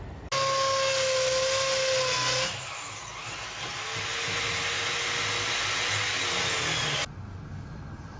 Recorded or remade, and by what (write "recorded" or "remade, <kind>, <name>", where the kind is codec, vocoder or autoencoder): recorded